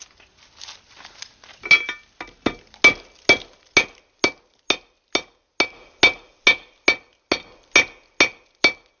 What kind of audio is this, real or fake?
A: real